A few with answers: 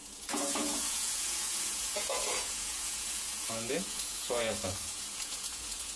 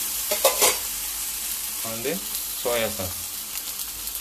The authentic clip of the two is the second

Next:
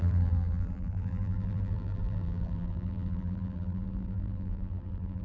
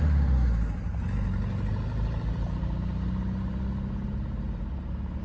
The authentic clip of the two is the second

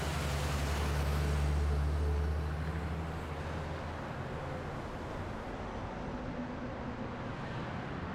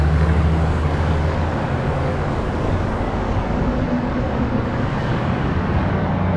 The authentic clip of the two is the first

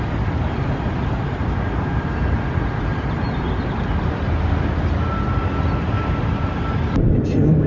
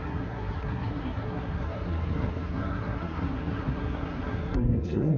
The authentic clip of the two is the first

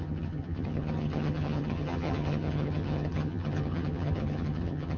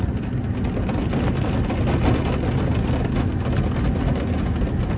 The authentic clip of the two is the second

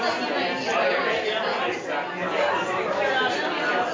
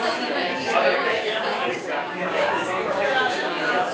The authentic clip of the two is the first